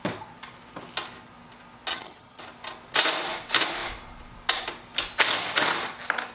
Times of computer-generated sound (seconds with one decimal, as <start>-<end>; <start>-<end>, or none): 1.9-2.4